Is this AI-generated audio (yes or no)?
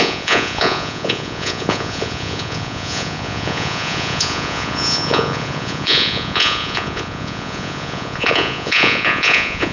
yes